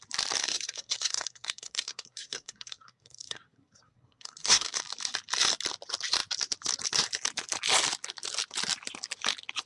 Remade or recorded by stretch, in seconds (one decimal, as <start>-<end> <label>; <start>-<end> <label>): 0.0-0.4 recorded; 0.4-4.8 remade; 4.8-9.7 recorded